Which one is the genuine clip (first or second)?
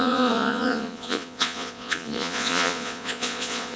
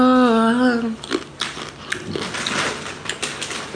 second